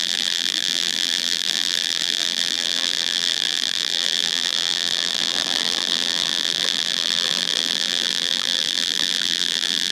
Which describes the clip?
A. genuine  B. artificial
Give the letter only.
B